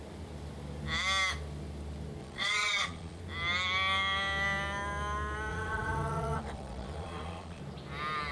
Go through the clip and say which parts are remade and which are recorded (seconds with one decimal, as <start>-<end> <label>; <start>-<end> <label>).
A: 0.0-2.2 recorded; 2.2-3.2 remade; 3.2-5.5 recorded; 5.5-7.6 remade; 7.6-8.3 recorded